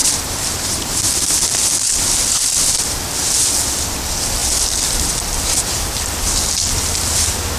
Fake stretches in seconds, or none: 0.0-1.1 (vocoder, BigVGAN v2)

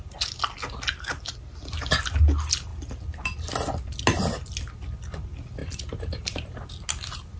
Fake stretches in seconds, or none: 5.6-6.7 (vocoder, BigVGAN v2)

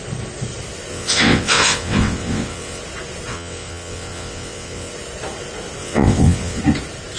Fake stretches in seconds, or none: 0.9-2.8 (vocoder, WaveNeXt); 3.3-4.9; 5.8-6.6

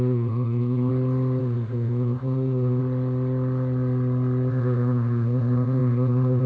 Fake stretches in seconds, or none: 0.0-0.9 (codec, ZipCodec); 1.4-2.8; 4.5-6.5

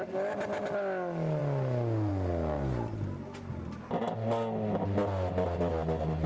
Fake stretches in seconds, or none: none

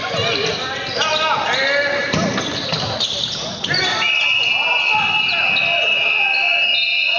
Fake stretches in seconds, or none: 2.0-4.2 (vocoder, BigVGAN v2)

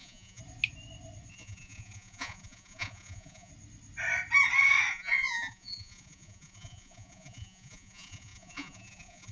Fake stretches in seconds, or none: 0.0-0.4 (vocoder, Vocos); 1.3-3.5; 4.9-9.3